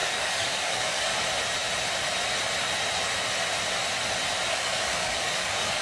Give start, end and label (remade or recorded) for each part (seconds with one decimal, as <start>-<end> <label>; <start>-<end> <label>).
0.0-1.1 remade; 1.1-4.5 recorded; 4.5-5.8 remade